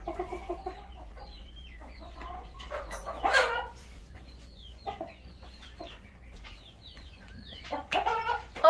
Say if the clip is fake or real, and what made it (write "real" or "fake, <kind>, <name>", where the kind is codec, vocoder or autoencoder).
fake, vocoder, Vocos